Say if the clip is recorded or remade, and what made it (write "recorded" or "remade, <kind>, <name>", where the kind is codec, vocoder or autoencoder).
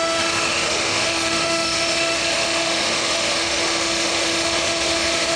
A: remade, autoencoder, DAC-VAE